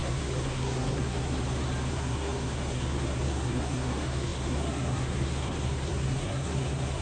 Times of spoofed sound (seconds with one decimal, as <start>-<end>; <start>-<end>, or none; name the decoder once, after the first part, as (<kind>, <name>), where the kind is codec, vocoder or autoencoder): 0.0-1.4 (codec, SNAC); 1.9-7.0